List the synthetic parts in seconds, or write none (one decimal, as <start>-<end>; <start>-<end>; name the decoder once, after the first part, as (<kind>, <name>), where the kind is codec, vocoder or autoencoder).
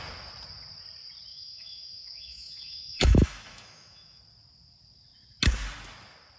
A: 1.3-4.2 (autoencoder, DAC-VAE)